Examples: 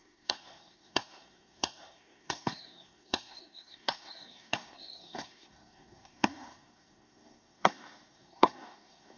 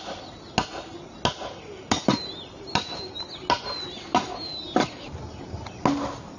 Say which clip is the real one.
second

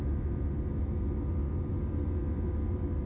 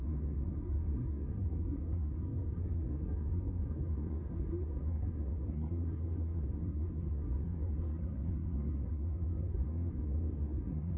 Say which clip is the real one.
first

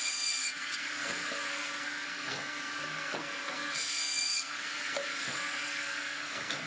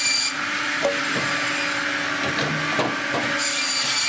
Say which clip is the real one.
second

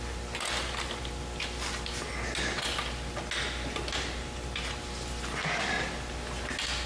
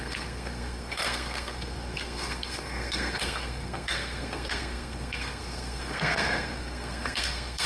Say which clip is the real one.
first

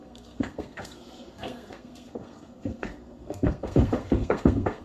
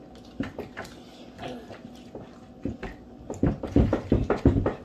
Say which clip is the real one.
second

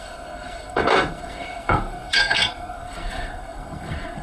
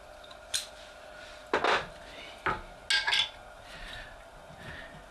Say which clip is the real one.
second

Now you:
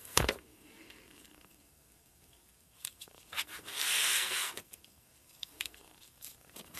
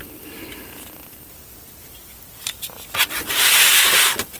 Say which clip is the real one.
second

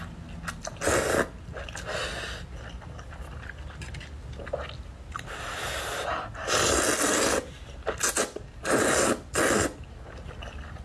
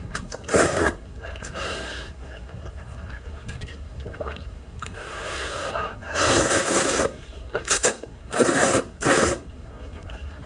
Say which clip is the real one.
first